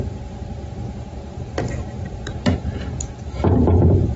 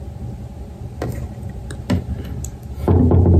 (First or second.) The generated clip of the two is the first